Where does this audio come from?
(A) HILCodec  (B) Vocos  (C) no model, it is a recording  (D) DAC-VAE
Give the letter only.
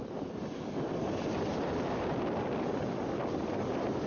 C